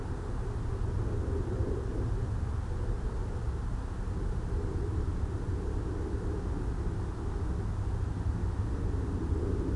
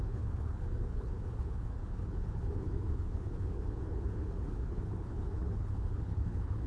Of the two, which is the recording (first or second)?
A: first